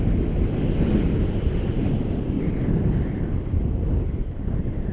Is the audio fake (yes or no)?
no